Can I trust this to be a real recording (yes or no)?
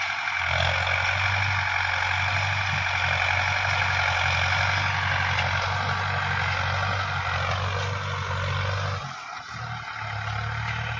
yes